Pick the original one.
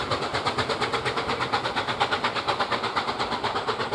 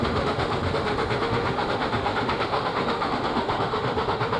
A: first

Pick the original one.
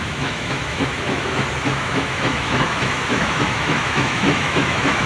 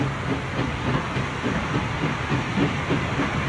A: second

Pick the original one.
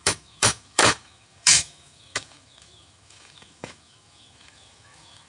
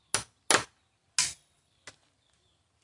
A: second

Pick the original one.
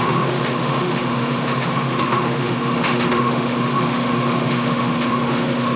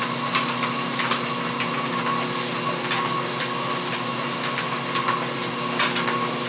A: second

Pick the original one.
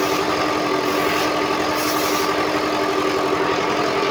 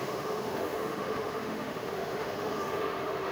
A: first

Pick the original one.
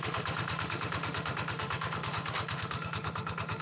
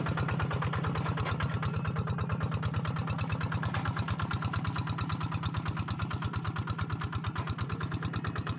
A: second